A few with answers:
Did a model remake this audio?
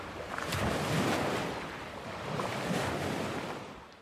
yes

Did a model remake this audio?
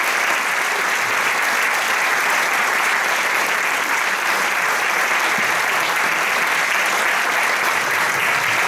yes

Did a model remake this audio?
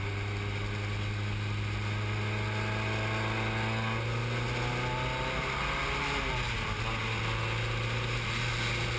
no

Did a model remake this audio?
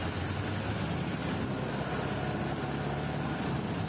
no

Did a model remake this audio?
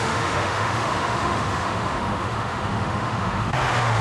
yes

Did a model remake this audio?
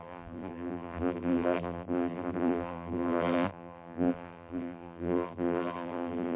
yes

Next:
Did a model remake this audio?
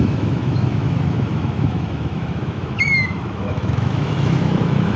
yes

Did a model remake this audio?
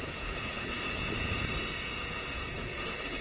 yes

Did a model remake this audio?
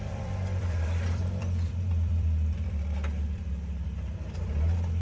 yes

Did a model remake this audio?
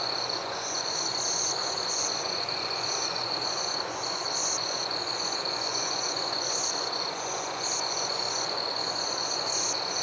yes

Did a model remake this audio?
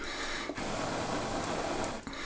no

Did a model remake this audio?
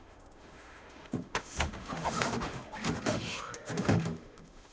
yes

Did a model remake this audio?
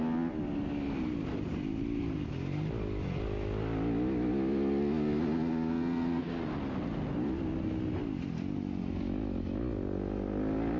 no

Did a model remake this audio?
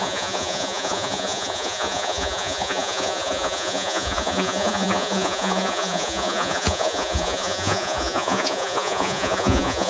yes